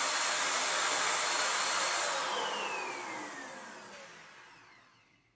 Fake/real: real